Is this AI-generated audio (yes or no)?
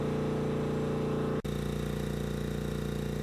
no